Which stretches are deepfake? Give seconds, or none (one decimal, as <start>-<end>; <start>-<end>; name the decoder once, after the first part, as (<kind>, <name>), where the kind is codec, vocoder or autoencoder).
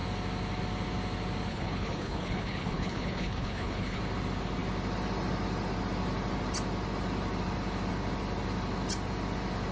1.5-4.0 (codec, HILCodec)